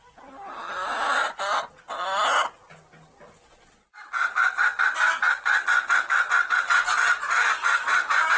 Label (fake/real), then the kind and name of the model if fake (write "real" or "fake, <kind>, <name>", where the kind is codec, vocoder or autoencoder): real